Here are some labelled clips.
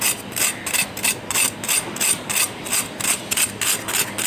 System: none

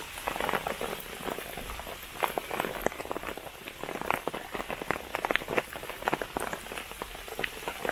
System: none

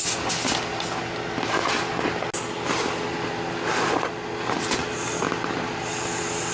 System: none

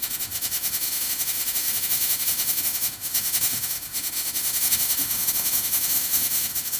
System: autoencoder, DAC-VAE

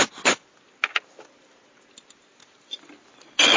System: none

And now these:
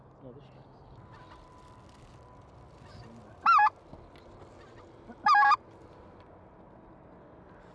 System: none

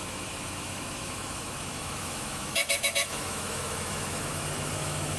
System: autoencoder, DAC-VAE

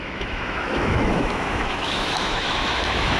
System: autoencoder, DAC-VAE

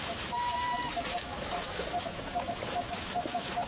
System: autoencoder, DAC-VAE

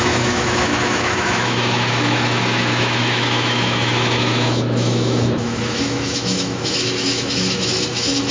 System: autoencoder, DAC-VAE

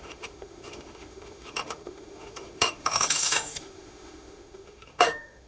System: autoencoder, DAC-VAE